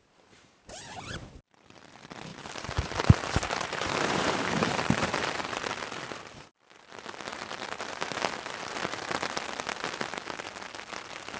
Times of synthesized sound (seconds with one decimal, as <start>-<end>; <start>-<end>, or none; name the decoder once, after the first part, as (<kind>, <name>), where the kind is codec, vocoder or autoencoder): 2.3-5.5 (vocoder, BigVGAN v2); 7.3-8.1